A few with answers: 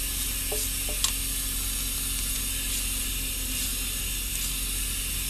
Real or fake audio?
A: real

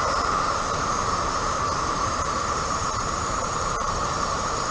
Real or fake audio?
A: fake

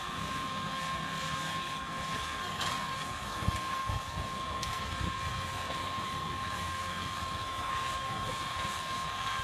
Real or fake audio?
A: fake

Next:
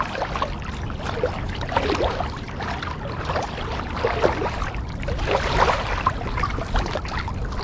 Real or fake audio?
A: real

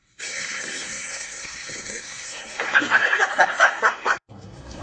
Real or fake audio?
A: fake